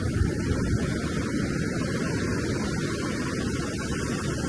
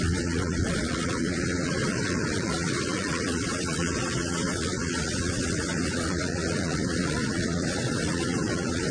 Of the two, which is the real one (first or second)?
first